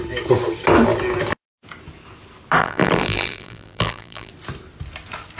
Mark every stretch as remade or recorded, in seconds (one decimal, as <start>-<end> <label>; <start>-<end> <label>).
0.0-2.6 recorded; 2.6-4.3 remade; 4.3-5.4 recorded